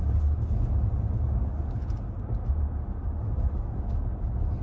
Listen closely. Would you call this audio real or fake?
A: real